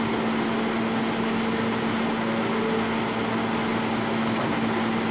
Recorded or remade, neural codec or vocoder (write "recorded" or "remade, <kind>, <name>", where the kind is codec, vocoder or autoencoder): recorded